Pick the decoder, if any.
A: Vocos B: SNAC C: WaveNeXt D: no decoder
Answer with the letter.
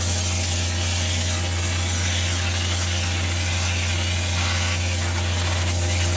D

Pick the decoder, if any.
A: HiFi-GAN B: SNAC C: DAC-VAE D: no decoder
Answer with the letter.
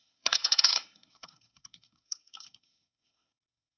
B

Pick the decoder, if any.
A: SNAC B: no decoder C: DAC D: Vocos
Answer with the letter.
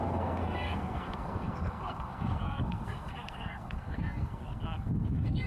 A